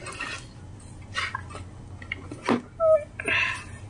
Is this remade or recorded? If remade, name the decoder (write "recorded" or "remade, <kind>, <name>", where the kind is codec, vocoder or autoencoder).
recorded